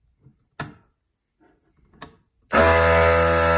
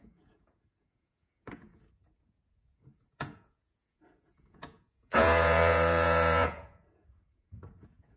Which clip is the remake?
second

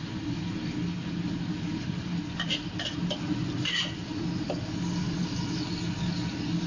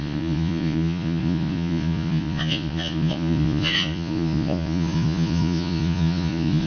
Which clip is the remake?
second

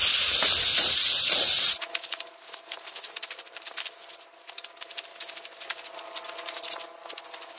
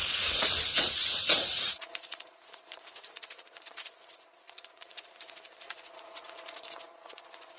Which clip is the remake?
second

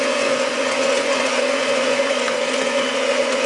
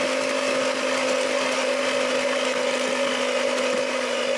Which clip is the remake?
first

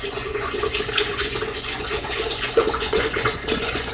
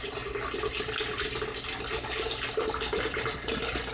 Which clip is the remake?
first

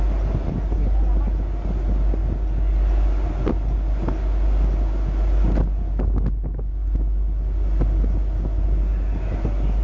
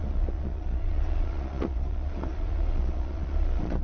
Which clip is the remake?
second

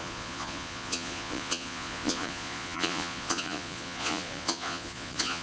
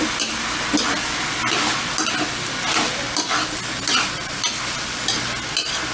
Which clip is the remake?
first